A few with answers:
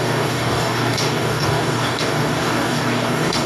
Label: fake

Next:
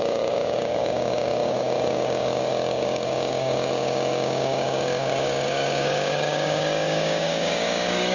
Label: fake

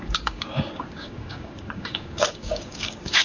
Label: fake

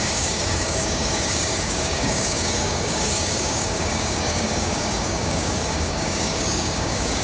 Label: fake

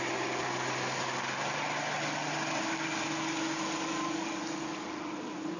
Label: real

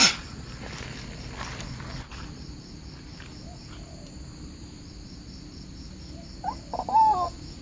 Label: real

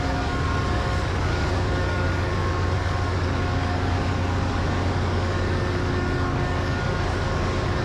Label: fake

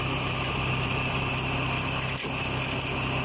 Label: real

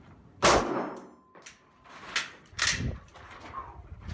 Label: real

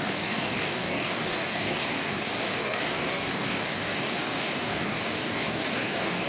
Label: fake